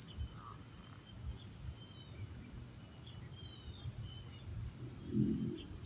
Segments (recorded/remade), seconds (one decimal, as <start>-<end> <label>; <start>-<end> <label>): 0.0-4.5 recorded; 4.5-5.9 remade